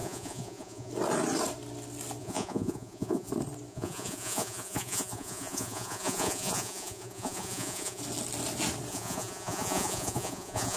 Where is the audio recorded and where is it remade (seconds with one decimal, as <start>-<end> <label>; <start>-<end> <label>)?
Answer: 0.0-0.9 remade; 0.9-2.2 recorded; 2.2-3.3 remade; 3.3-3.7 recorded; 3.7-8.0 remade; 8.0-8.9 recorded; 8.9-10.8 remade